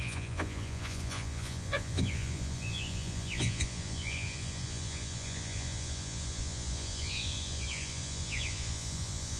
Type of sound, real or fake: fake